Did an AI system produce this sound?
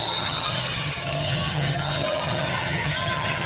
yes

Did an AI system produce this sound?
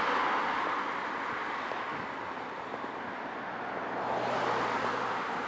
no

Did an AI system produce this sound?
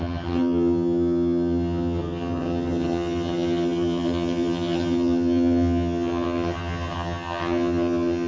yes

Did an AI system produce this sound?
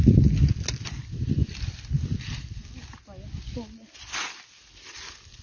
no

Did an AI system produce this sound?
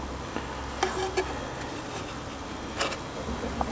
no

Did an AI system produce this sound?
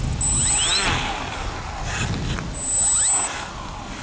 no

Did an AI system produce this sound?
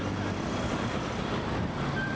no